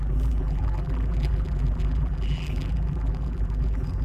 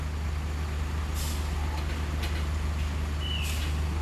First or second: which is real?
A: second